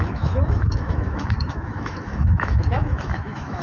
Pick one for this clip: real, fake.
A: fake